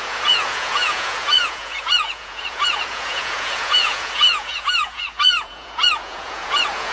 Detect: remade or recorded remade